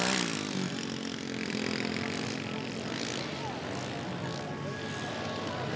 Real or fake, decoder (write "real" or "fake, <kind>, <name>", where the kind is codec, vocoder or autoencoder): real